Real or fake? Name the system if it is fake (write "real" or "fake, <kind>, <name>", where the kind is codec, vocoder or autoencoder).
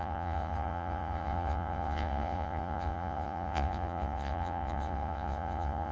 fake, vocoder, Vocos